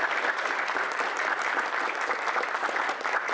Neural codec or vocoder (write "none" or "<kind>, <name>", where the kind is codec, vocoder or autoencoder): none